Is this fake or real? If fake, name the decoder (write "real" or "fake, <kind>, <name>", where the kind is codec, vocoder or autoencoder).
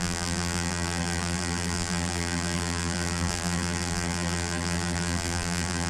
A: fake, vocoder, BigVGAN v2